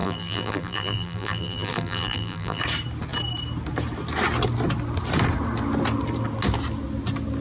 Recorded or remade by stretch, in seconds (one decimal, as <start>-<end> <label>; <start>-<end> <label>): 0.0-2.6 remade; 2.6-7.4 recorded

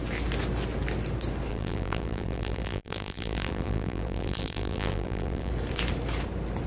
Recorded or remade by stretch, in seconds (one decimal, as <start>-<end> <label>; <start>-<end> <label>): 0.0-1.5 recorded; 1.5-5.5 remade; 5.5-6.7 recorded

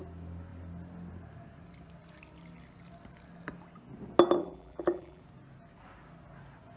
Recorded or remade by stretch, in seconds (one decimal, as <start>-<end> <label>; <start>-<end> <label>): 0.0-4.4 recorded; 4.4-5.2 remade; 5.2-6.8 recorded

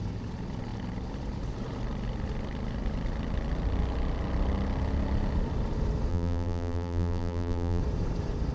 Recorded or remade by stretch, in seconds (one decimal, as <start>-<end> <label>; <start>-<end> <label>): 0.0-6.1 recorded; 6.1-7.8 remade; 7.8-8.5 recorded

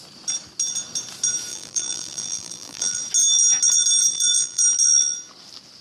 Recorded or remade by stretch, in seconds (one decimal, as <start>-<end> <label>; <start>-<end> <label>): 0.0-1.5 recorded; 1.5-3.0 remade; 3.0-4.0 recorded; 4.0-4.6 remade; 4.6-5.8 recorded

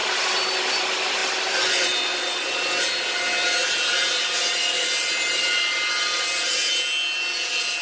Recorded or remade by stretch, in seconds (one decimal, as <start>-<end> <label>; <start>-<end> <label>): 0.0-7.8 recorded

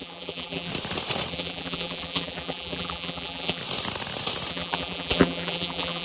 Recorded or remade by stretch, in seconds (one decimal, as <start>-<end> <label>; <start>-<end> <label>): 0.0-0.7 remade; 0.7-1.3 recorded; 1.3-3.6 remade; 3.6-4.5 recorded; 4.5-6.0 remade